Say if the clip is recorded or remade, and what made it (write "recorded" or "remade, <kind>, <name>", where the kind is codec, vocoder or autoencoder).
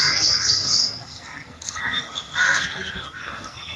remade, codec, SNAC